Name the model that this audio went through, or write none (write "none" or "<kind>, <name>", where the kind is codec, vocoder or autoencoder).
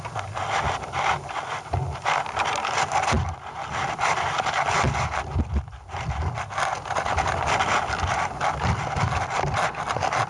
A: none